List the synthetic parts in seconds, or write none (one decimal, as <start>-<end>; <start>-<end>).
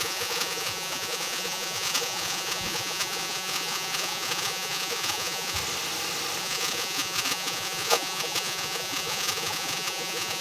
0.0-5.6; 6.4-10.4